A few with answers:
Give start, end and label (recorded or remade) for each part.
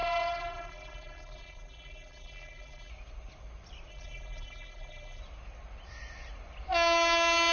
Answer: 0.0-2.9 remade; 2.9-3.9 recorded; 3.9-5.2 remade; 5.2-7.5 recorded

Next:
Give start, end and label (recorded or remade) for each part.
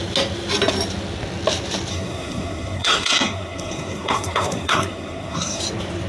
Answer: 0.0-1.9 recorded; 1.9-5.6 remade; 5.6-6.1 recorded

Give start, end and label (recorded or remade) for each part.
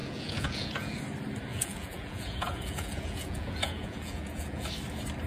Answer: 0.0-1.0 remade; 1.0-1.5 recorded; 1.5-4.7 remade; 4.7-5.3 recorded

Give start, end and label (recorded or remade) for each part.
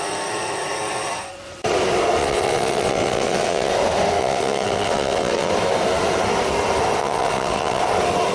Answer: 0.0-2.2 recorded; 2.2-3.7 remade; 3.7-4.2 recorded; 4.2-5.5 remade; 5.5-7.0 recorded; 7.0-7.8 remade; 7.8-8.3 recorded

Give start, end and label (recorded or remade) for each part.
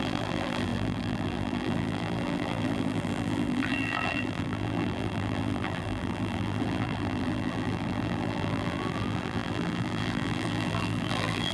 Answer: 0.0-11.5 remade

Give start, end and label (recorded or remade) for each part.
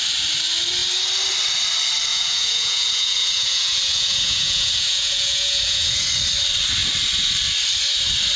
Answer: 0.0-2.1 recorded; 2.1-6.1 remade; 6.1-8.4 recorded